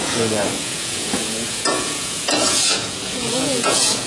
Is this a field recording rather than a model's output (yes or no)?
no